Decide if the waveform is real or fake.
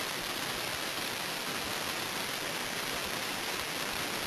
real